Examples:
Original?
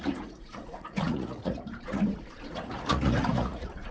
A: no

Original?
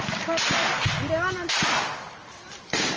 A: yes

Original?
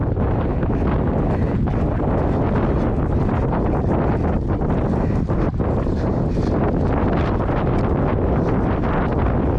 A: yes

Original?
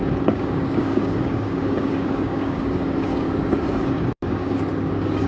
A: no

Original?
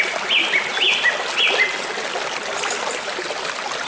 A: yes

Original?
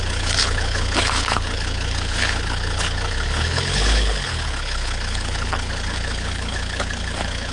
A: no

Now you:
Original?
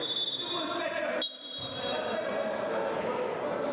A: yes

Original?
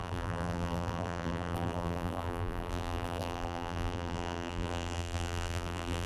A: no